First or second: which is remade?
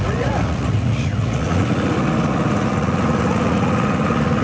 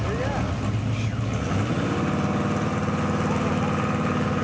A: first